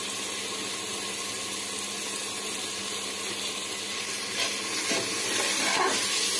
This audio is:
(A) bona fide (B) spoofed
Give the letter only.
A